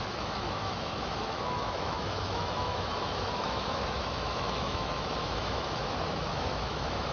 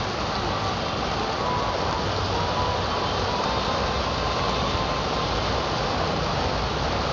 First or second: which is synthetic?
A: first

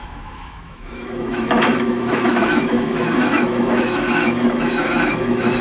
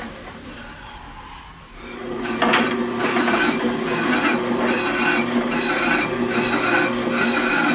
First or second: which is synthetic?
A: first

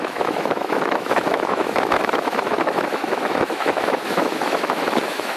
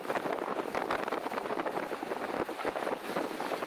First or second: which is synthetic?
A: first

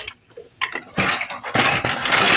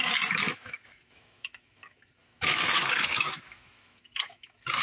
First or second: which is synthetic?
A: second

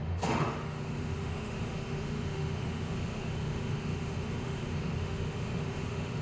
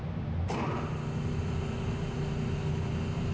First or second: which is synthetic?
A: first